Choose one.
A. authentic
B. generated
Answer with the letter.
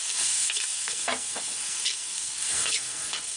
B